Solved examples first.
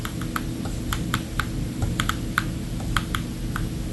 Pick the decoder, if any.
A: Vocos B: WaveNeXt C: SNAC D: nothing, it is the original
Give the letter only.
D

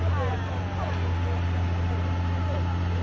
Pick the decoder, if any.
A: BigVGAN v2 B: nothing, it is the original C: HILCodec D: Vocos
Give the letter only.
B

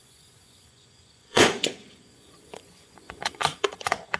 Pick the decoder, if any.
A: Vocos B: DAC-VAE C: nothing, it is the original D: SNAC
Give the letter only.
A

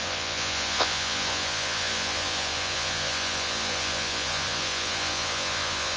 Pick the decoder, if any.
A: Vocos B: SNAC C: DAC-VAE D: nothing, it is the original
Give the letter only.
A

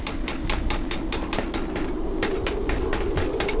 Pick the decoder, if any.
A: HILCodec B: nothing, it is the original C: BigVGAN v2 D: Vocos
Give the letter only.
B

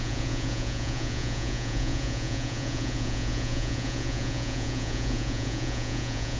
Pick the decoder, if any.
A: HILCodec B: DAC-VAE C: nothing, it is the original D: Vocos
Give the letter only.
D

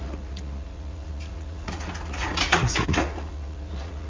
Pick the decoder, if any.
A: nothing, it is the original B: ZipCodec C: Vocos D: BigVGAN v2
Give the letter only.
C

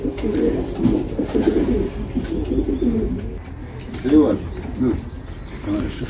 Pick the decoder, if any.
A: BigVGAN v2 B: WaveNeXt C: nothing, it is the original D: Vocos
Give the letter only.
C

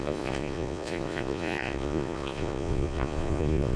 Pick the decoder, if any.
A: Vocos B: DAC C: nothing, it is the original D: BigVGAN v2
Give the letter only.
A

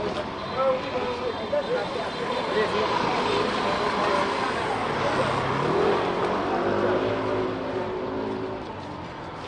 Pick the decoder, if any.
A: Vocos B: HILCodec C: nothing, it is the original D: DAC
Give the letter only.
C